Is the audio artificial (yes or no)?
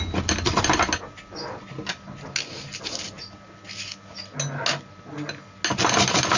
no